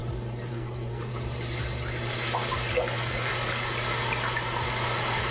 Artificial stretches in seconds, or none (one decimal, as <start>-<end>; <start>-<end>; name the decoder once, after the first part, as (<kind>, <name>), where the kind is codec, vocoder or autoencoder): 0.5-1.1 (codec, SNAC); 2.7-3.3